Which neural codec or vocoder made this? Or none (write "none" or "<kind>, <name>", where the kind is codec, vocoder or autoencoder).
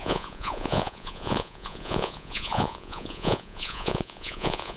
vocoder, Vocos